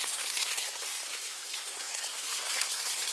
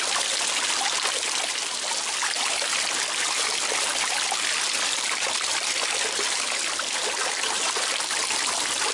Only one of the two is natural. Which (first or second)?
second